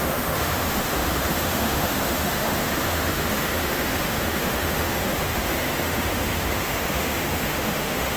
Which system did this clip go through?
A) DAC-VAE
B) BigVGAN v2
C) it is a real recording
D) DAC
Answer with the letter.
A